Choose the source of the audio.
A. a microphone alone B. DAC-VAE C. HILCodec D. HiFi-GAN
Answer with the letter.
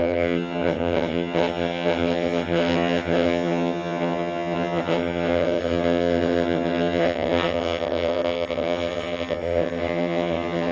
D